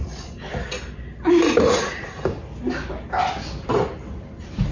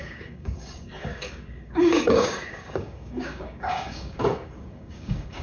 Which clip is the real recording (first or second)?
first